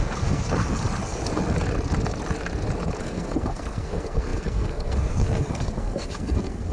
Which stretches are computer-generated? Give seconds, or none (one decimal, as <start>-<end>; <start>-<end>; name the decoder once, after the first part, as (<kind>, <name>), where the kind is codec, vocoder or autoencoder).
0.0-0.6 (codec, SNAC); 3.0-6.7